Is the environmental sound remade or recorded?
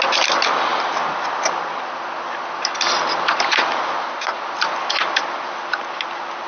recorded